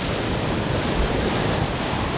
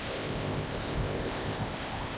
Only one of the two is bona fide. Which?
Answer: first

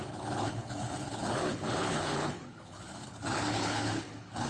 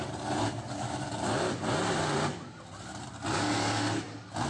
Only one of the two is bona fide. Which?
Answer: second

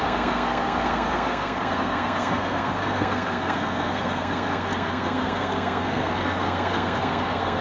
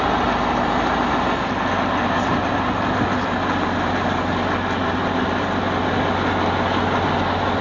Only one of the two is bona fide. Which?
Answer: second